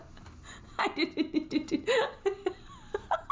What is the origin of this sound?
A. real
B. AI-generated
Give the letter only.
A